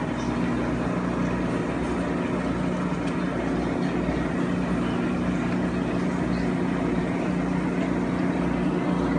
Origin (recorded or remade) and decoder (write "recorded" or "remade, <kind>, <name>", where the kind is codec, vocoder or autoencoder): recorded